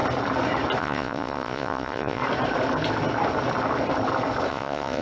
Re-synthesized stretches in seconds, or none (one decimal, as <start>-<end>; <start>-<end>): 0.8-2.2; 4.5-5.0

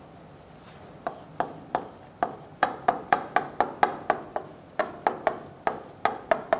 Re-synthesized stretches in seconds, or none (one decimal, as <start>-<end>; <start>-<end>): 2.5-3.3

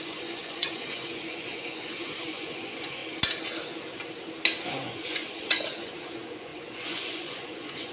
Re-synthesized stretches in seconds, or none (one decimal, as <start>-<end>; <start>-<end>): 0.0-3.0; 4.6-7.9